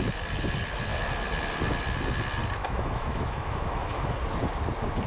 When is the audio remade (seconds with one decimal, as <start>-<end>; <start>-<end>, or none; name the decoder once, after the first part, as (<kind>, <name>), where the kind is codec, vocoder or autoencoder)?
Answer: 2.6-4.2 (autoencoder, DAC-VAE)